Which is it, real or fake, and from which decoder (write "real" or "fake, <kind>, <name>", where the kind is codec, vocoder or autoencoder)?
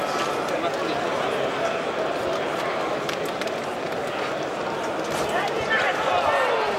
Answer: real